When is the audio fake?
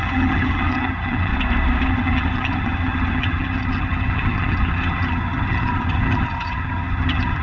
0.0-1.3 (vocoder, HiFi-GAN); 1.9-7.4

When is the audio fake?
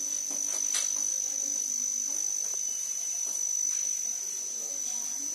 2.5-4.2 (vocoder, BigVGAN v2)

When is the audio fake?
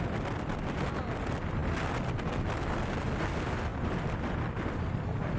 none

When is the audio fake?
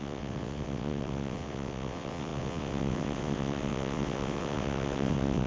0.0-5.5 (vocoder, WaveNeXt)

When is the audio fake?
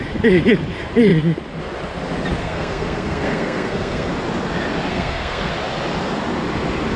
2.4-4.1 (codec, SNAC); 4.9-5.5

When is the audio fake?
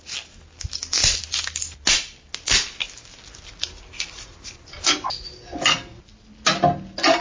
none